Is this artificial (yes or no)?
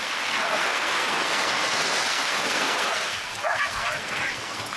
yes